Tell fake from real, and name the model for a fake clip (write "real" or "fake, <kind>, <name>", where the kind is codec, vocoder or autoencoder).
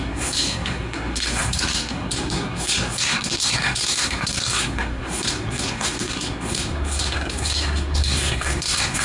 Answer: fake, codec, SNAC